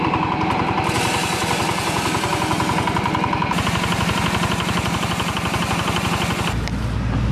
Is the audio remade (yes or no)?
no